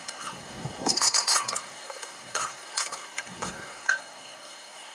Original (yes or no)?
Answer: no